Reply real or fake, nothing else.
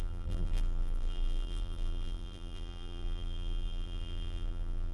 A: fake